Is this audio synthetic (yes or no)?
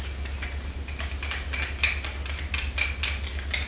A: no